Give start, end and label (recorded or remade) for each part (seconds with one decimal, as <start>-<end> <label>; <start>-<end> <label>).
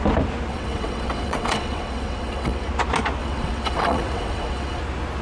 0.0-0.5 recorded; 0.5-2.7 remade; 2.7-3.2 recorded; 3.2-4.8 remade; 4.8-5.2 recorded